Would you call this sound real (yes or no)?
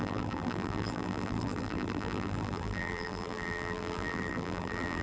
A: no